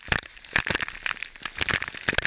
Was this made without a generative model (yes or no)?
yes